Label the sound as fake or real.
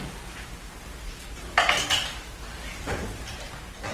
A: real